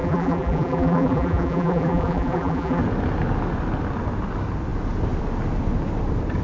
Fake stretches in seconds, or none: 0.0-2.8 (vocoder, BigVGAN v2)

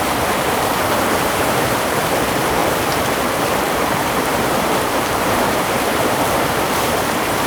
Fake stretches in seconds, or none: 0.0-7.5 (vocoder, BigVGAN v2)

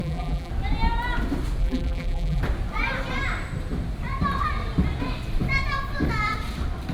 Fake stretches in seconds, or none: 0.0-0.5 (vocoder, BigVGAN v2); 1.6-2.4

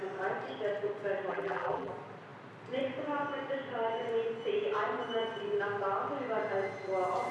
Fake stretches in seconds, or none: 1.3-1.9 (vocoder, BigVGAN v2)

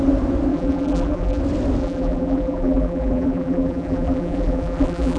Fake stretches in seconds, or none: 0.5-1.4 (vocoder, BigVGAN v2); 1.8-5.2

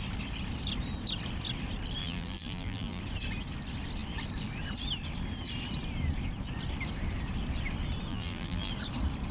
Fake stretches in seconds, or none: 2.0-3.0 (vocoder, BigVGAN v2); 8.1-8.7

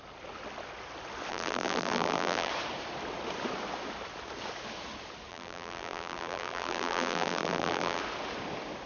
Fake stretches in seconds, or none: 1.3-2.5 (vocoder, BigVGAN v2); 5.3-8.0

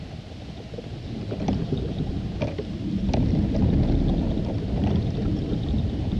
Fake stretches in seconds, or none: 0.9-2.1 (vocoder, BigVGAN v2); 5.2-6.2